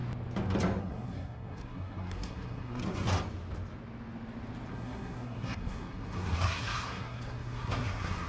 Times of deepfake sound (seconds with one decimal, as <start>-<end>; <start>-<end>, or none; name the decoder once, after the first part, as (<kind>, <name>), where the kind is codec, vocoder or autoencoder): 0.8-2.8 (codec, SNAC); 4.7-8.3